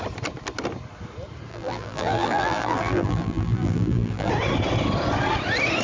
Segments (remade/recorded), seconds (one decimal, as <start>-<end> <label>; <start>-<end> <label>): 0.0-1.5 recorded; 1.5-4.3 remade; 4.3-5.8 recorded